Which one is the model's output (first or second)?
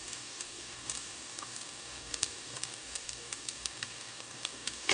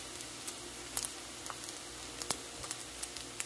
first